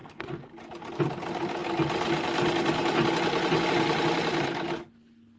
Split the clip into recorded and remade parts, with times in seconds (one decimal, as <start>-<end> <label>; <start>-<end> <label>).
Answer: 0.0-0.5 remade; 0.5-5.4 recorded

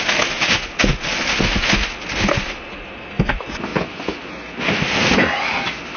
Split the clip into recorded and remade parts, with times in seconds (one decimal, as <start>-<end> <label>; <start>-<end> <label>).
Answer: 0.0-6.0 recorded

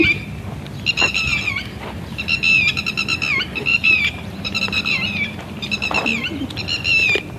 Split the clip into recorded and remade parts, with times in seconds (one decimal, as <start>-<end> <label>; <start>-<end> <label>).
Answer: 0.0-3.7 recorded; 3.7-4.6 remade; 4.6-7.4 recorded